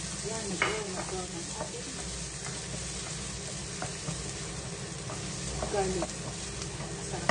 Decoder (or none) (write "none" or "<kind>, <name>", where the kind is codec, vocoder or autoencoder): none